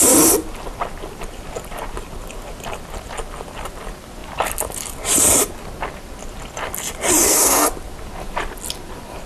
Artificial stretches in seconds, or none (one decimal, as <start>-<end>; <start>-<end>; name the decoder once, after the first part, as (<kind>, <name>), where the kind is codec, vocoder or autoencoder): 7.2-7.7 (codec, SNAC)